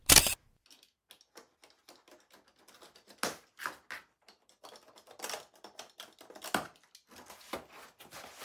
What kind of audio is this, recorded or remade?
recorded